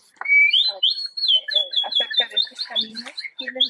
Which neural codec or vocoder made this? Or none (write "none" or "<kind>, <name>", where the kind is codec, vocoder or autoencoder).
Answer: vocoder, BigVGAN v2